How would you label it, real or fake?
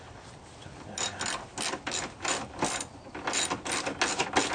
real